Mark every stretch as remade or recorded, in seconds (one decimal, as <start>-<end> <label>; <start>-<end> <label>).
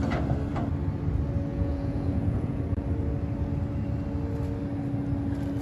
0.0-1.5 recorded; 1.5-2.6 remade; 2.6-5.6 recorded